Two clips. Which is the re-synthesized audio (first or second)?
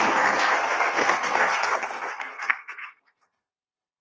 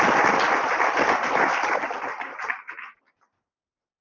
first